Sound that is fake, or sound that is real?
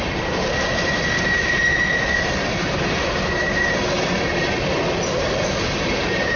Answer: fake